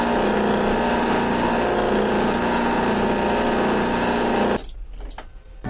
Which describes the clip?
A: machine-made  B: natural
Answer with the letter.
B